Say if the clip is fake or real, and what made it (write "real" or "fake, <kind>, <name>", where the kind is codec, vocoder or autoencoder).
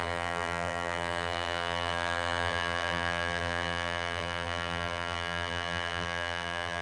fake, vocoder, BigVGAN v2